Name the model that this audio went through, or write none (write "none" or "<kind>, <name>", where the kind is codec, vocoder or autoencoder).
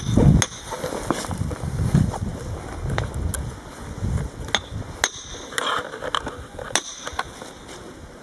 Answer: none